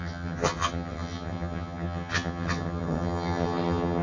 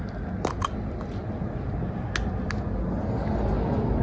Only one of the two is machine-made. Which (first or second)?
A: first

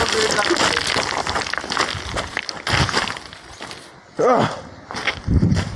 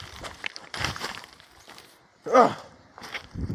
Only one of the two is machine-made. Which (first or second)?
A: second